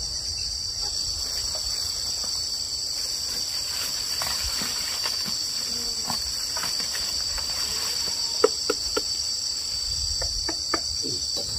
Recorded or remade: remade